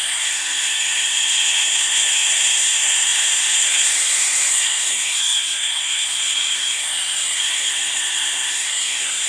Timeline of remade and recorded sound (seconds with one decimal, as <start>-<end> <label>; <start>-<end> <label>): 0.0-9.3 remade